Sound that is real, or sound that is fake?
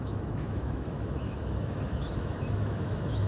fake